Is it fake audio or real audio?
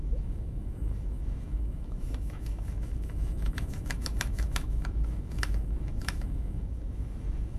fake